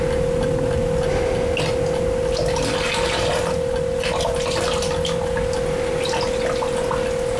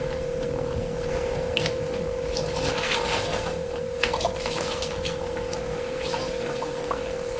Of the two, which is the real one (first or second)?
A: first